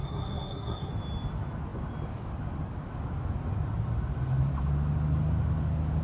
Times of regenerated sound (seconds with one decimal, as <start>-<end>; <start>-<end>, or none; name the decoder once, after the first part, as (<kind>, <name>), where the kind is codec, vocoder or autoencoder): 0.0-0.9 (codec, SNAC)